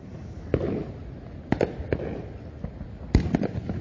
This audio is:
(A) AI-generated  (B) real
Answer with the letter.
B